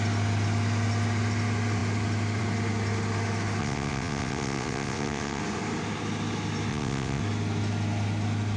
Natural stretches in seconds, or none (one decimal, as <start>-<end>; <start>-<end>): 0.0-3.6; 5.4-6.7; 7.2-8.6